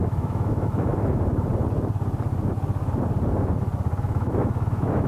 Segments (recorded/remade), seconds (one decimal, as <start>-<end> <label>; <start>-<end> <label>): 0.0-0.9 remade; 0.9-4.0 recorded; 4.0-5.1 remade